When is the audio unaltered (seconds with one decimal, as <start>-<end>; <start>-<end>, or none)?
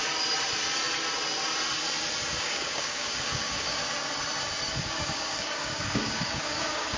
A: 0.0-2.4; 3.8-4.8